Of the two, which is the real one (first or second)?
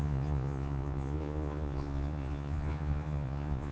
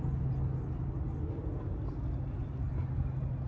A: second